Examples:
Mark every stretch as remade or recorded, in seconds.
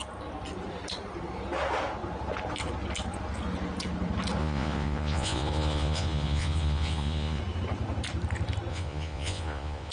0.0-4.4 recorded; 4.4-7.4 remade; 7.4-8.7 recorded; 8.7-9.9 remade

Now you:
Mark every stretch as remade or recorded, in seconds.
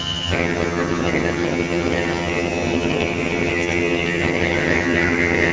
0.0-5.5 remade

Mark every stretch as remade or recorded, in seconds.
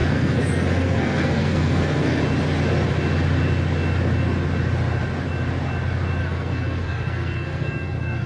0.0-2.2 remade; 2.2-6.2 recorded; 6.2-8.3 remade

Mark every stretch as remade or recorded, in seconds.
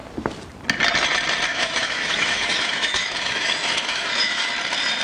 0.0-1.5 recorded; 1.5-4.5 remade; 4.5-5.0 recorded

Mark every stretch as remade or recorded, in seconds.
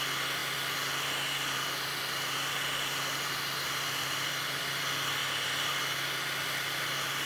0.0-5.2 recorded; 5.2-5.8 remade; 5.8-7.3 recorded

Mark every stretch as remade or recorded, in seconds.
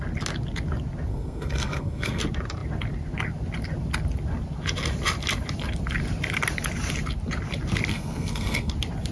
0.0-1.1 recorded; 1.1-2.2 remade; 2.2-7.9 recorded; 7.9-8.7 remade; 8.7-9.1 recorded